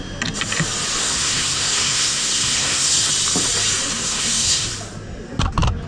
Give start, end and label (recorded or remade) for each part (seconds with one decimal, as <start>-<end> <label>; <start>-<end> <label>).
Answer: 0.0-1.0 recorded; 1.0-3.1 remade; 3.1-3.9 recorded; 3.9-4.7 remade; 4.7-5.9 recorded